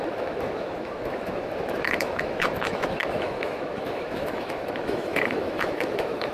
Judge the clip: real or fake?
fake